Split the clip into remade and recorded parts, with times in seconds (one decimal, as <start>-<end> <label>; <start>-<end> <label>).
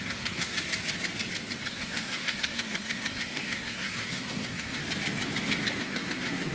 0.0-0.5 remade; 0.5-1.6 recorded; 1.6-4.8 remade; 4.8-5.8 recorded; 5.8-6.5 remade